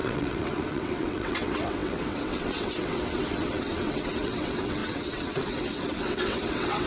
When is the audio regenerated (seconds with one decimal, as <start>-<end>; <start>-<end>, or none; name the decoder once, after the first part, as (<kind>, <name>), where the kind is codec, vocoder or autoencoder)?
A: 0.0-6.9 (vocoder, WaveNeXt)